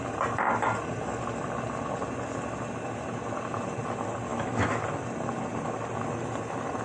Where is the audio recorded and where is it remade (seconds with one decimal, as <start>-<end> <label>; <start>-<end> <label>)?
0.0-4.3 recorded; 4.3-4.8 remade; 4.8-6.8 recorded